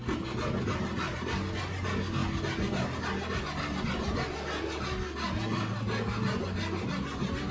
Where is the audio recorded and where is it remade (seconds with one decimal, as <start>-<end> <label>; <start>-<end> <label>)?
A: 0.0-7.5 recorded